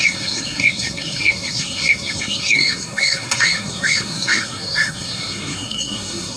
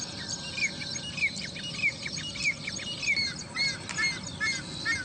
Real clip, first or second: second